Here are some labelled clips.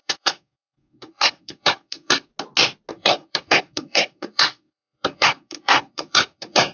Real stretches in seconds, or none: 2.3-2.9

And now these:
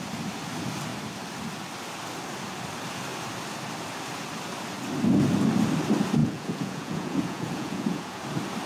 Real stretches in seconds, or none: 0.0-6.2; 8.2-8.7